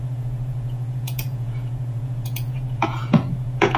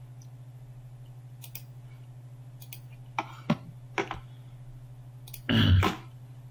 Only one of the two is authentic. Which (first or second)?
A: second